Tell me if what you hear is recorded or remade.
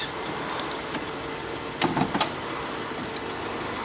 recorded